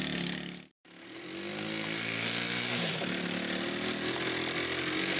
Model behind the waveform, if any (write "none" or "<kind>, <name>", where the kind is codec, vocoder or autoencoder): none